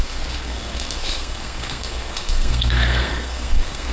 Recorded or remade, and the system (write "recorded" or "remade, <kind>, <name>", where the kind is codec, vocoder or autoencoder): remade, codec, SNAC